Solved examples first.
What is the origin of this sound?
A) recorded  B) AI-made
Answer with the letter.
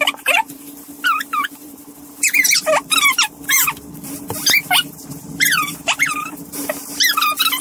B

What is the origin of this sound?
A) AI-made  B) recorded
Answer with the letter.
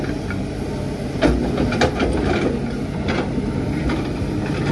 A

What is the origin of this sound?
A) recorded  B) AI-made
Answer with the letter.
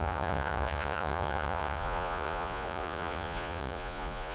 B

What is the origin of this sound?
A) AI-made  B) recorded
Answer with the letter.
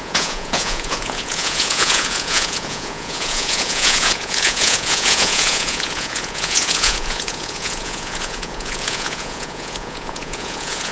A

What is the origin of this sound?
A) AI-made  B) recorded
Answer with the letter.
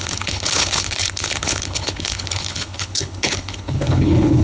A